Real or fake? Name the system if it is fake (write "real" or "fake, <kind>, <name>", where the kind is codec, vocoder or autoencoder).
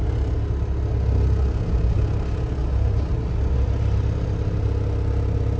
real